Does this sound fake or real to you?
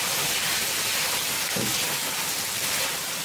real